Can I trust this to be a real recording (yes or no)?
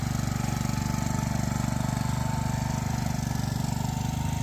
yes